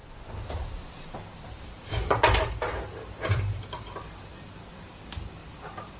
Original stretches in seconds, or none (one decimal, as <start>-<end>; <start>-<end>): 3.6-5.4